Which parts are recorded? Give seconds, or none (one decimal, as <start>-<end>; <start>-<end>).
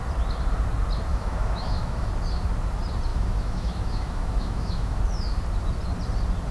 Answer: 0.0-1.1; 2.1-3.1; 5.0-6.5